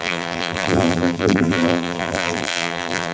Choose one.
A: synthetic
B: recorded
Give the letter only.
A